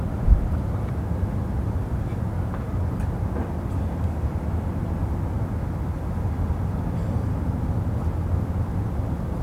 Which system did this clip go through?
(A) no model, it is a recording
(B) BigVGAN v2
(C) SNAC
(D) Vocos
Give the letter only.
A